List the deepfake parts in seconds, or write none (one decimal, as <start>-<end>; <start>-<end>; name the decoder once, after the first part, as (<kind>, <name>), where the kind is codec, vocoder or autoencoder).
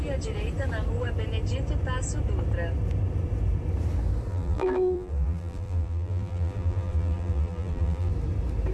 4.3-8.1 (vocoder, BigVGAN v2)